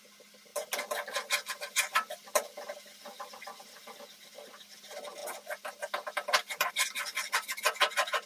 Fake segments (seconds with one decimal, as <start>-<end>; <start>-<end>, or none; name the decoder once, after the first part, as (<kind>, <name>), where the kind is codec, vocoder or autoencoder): 0.0-0.5 (vocoder, BigVGAN v2); 1.6-3.8; 4.3-8.3